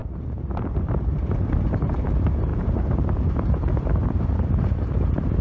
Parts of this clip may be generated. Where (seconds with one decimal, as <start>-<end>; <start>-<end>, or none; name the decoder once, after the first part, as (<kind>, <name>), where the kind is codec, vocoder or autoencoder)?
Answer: 0.0-5.4 (vocoder, BigVGAN v2)